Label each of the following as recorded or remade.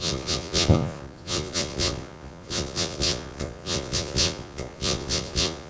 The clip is remade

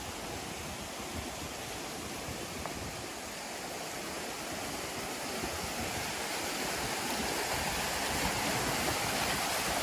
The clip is recorded